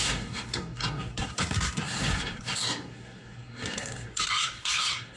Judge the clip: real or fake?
fake